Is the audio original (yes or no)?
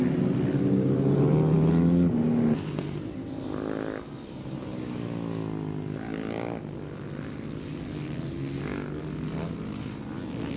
yes